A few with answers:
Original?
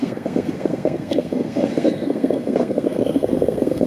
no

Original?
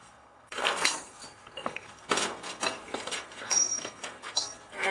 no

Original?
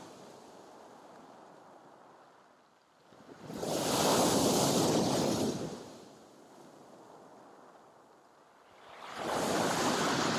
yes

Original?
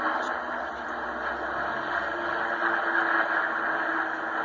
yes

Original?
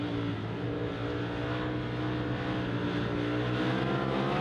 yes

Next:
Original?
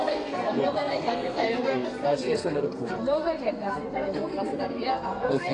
no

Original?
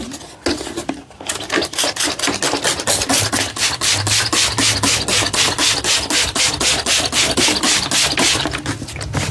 yes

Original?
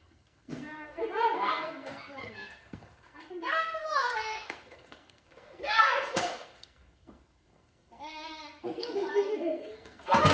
no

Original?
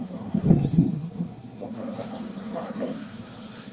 no